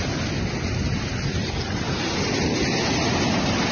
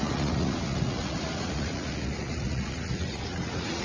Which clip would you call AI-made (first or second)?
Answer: second